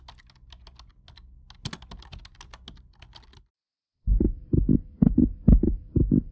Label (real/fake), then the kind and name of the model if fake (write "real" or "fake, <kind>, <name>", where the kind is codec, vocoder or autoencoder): real